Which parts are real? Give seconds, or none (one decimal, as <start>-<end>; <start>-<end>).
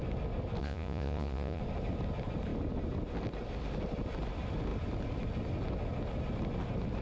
0.0-0.6; 1.6-7.0